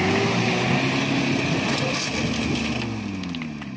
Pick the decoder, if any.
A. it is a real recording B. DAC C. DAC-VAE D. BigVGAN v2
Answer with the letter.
A